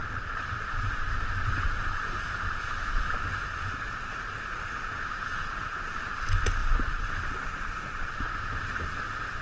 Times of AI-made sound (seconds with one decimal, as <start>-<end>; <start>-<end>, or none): none